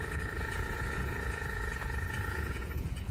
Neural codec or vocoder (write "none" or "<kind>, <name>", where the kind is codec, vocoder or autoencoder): vocoder, Vocos